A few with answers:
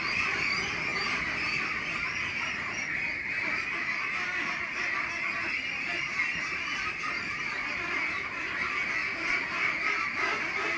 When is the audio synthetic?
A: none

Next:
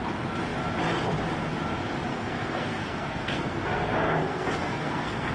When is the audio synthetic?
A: 2.1-5.3 (codec, SNAC)